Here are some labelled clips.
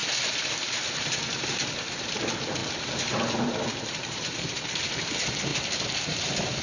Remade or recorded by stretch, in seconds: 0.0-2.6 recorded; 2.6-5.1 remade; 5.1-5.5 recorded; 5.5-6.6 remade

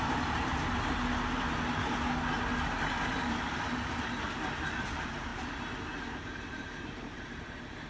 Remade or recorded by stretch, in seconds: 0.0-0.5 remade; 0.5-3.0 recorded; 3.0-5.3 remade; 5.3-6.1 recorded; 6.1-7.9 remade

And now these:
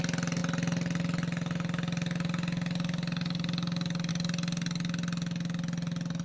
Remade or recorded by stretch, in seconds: 0.0-6.2 recorded